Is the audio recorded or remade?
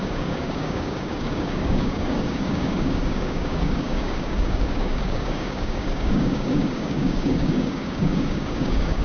remade